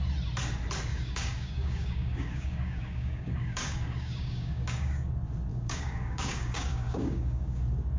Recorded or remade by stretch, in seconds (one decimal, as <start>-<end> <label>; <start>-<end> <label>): 0.0-0.9 recorded; 0.9-5.1 remade; 5.1-5.5 recorded; 5.5-7.6 remade; 7.6-8.0 recorded